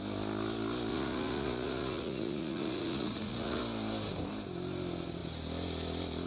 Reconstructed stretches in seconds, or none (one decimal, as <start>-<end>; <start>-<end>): 0.9-3.6